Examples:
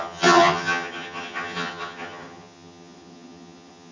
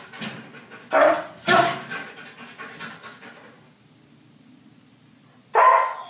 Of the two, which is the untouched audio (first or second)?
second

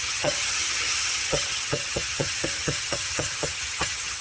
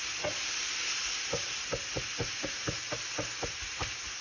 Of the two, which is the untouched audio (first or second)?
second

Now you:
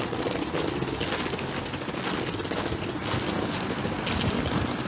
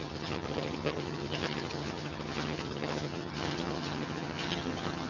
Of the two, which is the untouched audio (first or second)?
first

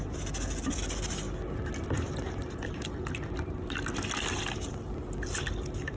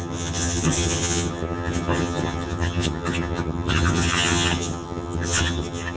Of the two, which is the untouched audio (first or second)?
first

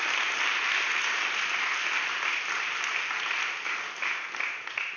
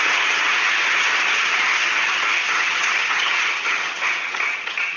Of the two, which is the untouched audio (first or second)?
first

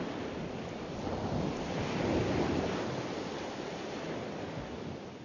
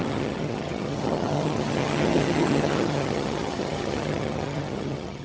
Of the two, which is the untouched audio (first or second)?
first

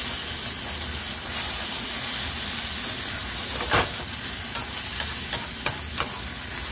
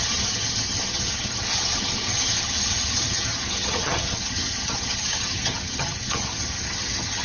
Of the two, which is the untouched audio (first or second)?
first